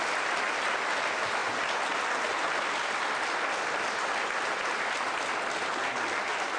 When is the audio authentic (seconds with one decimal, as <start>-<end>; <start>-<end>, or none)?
0.0-6.6